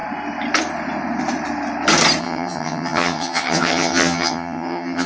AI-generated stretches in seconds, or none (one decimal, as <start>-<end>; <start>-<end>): 2.2-5.1